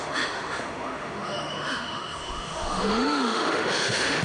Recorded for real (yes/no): no